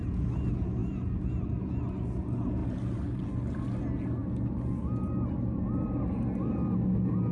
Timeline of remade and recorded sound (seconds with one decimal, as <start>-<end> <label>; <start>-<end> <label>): 0.0-7.3 recorded